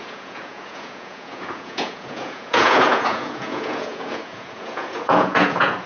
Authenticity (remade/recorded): remade